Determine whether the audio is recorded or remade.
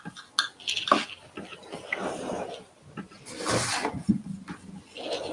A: recorded